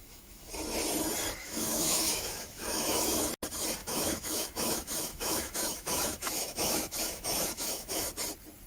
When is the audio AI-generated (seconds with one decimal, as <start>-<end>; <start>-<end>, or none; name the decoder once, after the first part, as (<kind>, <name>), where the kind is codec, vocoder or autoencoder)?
0.0-0.5 (autoencoder, DAC-VAE); 1.4-3.3; 3.8-8.1

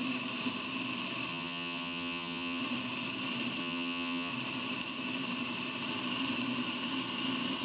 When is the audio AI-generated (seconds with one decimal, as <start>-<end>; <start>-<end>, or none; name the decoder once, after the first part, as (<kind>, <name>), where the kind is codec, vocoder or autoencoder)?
1.3-2.6 (vocoder, HiFi-GAN); 3.6-4.3

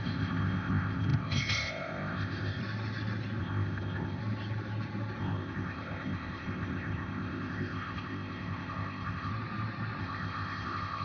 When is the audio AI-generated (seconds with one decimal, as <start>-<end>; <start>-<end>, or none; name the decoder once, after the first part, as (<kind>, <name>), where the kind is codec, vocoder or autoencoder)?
0.0-2.6 (codec, ZipCodec); 3.4-4.2; 5.2-9.3; 10.0-11.0

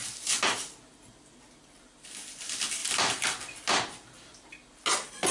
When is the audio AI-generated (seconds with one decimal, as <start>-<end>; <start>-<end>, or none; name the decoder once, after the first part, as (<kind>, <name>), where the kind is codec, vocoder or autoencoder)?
2.8-4.5 (vocoder, BigVGAN v2)

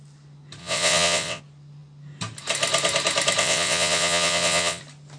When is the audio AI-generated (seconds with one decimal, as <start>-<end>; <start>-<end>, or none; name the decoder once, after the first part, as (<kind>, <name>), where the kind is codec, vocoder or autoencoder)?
0.6-1.4 (vocoder, WaveNeXt); 3.4-4.8

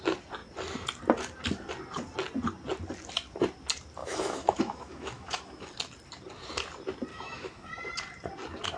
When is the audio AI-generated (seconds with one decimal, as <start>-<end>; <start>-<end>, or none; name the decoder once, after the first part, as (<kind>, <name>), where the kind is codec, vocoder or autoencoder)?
4.0-5.7 (autoencoder, DAC-VAE); 7.1-7.7

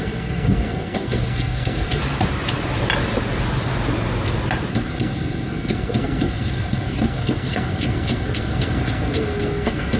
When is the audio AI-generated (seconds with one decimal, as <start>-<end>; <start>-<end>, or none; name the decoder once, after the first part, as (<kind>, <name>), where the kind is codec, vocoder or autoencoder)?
0.0-2.0 (codec, SNAC); 4.7-10.0

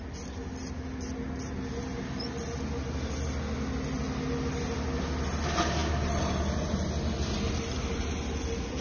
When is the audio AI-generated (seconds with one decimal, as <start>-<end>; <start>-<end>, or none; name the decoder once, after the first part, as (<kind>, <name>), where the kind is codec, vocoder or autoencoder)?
none